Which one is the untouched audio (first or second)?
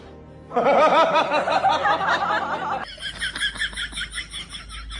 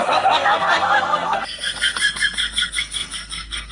first